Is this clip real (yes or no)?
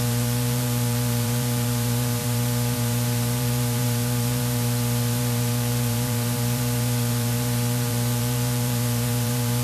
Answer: no